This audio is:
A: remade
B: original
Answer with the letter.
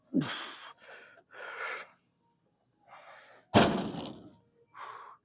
B